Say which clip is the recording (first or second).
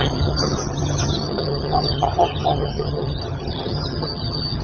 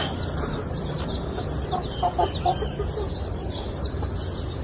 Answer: second